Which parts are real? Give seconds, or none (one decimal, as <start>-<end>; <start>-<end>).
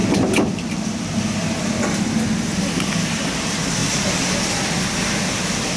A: 1.3-3.8; 4.4-5.8